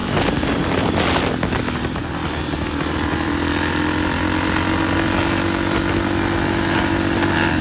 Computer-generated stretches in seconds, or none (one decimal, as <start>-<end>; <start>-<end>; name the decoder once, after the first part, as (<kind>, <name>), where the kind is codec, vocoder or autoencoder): none

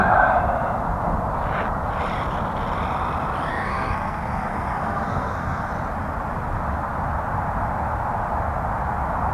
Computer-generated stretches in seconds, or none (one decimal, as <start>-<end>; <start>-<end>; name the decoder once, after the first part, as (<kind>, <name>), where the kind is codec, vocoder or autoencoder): 3.5-5.7 (codec, SNAC)

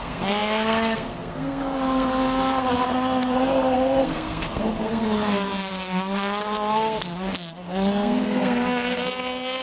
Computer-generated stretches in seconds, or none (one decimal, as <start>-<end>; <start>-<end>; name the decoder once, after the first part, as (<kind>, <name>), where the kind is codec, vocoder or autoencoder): 0.0-9.6 (codec, SNAC)

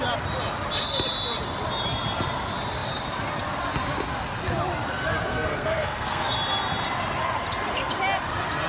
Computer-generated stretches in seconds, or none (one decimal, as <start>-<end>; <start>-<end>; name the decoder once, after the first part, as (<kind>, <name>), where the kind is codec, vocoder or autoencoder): 5.3-6.3 (codec, SNAC)

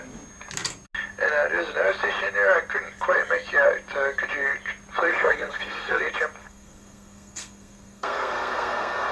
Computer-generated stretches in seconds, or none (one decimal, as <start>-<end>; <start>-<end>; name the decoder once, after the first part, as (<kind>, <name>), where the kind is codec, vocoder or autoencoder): 5.1-6.0 (codec, SNAC); 6.4-9.1

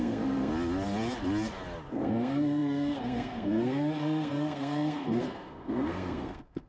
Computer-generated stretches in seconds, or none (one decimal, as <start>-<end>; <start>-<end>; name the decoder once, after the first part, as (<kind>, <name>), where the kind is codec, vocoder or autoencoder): 0.0-0.5 (codec, SNAC); 1.9-6.7

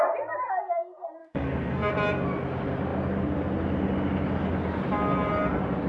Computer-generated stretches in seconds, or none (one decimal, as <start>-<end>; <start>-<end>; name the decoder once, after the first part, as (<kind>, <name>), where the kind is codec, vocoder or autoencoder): 1.2-1.9 (codec, SNAC)